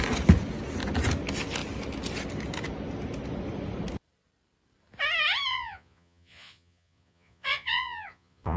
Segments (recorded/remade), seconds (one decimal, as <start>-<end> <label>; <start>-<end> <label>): 0.0-5.5 recorded; 5.5-8.6 remade